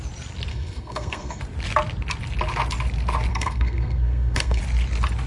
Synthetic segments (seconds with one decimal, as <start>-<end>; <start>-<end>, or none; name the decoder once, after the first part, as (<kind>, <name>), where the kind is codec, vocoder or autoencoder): 0.5-1.4 (codec, SNAC); 3.3-4.6